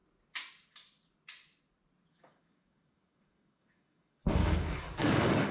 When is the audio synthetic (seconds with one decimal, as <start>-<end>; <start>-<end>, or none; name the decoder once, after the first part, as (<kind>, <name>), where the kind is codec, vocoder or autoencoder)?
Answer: 2.1-5.5 (codec, DAC)